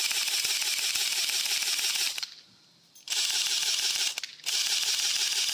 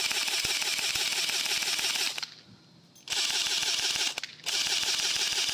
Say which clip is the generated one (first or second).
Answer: first